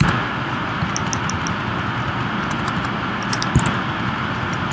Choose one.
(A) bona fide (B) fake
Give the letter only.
A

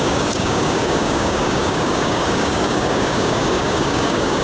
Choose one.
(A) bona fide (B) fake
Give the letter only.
B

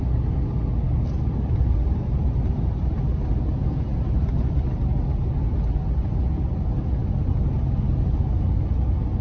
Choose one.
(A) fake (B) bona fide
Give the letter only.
B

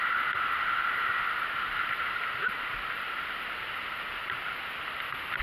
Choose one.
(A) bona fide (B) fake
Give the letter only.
A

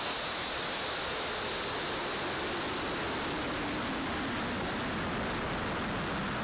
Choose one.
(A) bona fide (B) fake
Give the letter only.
A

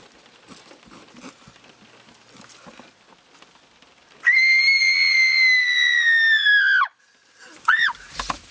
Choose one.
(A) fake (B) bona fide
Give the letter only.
B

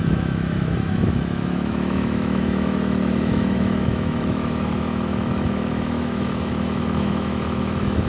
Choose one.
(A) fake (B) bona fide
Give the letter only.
A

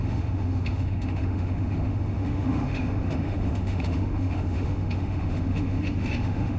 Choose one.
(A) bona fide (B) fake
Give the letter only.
B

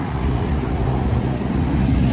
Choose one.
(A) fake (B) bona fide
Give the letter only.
A